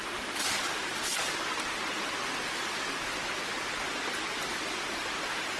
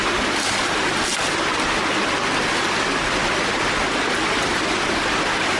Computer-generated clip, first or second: second